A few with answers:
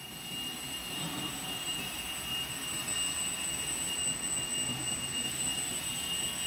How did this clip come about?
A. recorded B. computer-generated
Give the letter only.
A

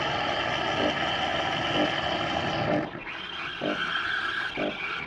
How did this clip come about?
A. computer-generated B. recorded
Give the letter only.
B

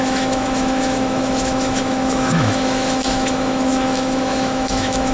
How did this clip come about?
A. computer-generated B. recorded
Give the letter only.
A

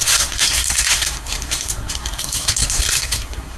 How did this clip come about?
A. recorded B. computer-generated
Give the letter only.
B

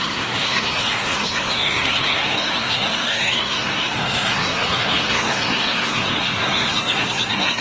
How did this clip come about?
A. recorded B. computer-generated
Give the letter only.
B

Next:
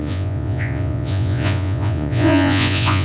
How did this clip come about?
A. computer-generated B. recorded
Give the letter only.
A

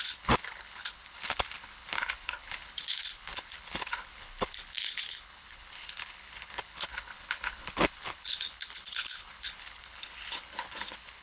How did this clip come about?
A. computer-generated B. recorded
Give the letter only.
A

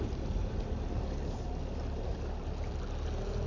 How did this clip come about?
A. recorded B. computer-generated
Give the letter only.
A